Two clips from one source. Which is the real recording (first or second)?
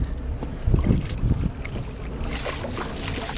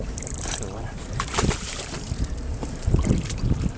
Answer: first